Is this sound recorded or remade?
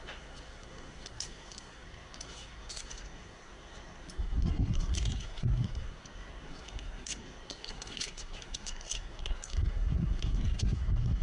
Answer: remade